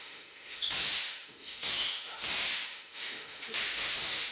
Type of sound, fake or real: fake